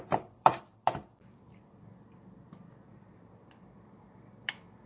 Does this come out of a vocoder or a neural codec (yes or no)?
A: yes